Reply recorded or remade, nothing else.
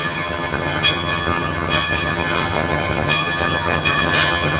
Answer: remade